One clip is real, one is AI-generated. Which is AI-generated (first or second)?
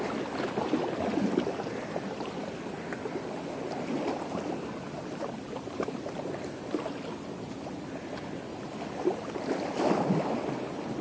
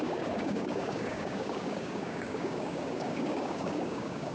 second